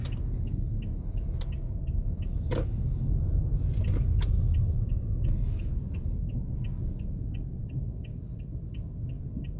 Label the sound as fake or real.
real